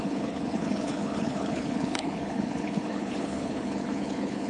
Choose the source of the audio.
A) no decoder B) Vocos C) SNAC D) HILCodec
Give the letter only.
D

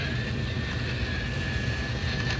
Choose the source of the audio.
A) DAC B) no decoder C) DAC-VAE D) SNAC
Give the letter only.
B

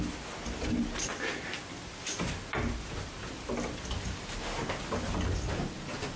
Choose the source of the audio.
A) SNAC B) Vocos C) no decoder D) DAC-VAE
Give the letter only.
C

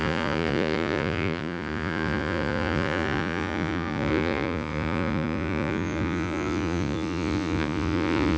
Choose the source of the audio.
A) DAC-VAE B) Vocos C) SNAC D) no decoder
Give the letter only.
B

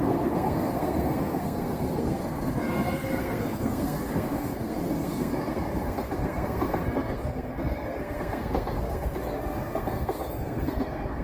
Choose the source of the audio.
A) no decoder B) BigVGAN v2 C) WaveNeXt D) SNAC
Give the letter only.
D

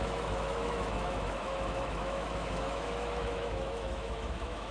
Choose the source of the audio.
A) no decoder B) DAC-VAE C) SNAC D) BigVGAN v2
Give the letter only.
B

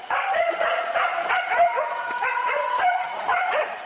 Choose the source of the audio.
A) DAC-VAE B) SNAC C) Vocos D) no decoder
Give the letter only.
C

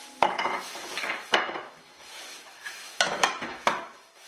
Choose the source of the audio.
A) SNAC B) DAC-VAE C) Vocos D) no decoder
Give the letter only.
B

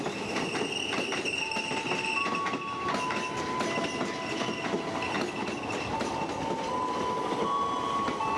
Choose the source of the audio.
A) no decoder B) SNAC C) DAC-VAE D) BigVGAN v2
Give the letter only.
A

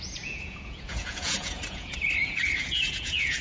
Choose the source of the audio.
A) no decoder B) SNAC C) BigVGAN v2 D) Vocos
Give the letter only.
D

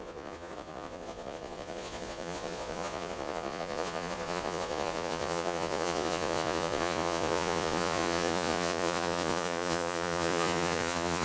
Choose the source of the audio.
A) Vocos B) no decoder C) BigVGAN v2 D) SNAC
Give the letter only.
A